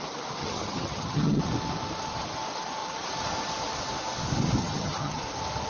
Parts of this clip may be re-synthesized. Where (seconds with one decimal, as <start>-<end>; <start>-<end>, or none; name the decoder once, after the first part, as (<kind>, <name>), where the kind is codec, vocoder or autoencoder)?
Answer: 0.4-1.4 (vocoder, HiFi-GAN); 4.6-5.2